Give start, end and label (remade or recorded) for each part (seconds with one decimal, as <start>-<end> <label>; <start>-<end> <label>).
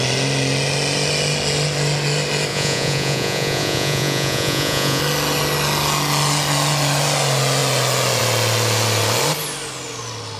0.0-2.5 recorded; 2.5-5.0 remade; 5.0-10.4 recorded